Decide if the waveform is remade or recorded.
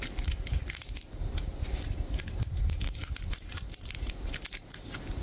recorded